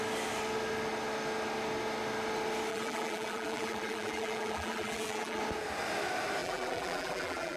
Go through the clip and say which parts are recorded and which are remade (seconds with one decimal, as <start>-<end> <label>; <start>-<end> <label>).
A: 0.0-2.7 recorded; 2.7-5.4 remade; 5.4-6.4 recorded; 6.4-7.6 remade